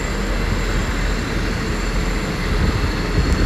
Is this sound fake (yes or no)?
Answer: no